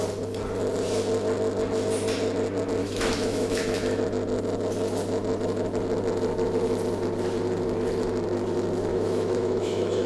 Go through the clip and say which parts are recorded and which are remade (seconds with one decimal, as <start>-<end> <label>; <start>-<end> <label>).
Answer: 0.0-2.8 recorded; 2.8-4.0 remade; 4.0-8.9 recorded; 8.9-10.1 remade